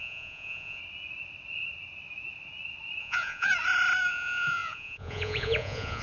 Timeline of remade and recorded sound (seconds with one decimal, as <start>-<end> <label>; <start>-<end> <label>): 0.0-0.8 remade; 0.8-3.0 recorded; 3.0-3.5 remade; 3.5-4.1 recorded; 4.1-6.0 remade